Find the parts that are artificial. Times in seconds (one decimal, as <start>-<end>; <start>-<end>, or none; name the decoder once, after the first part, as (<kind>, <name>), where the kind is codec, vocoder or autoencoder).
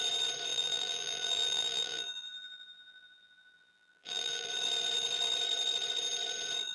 0.5-4.5 (vocoder, BigVGAN v2)